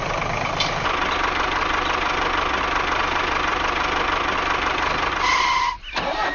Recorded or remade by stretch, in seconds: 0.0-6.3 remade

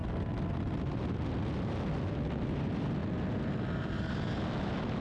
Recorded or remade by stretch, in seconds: 0.0-5.0 recorded

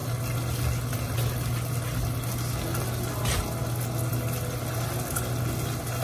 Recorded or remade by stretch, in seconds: 0.0-6.0 recorded

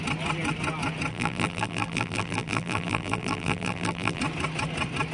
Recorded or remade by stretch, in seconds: 0.0-1.1 recorded; 1.1-4.2 remade; 4.2-5.1 recorded

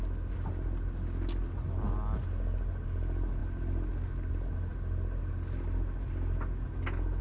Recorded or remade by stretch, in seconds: 0.0-7.2 recorded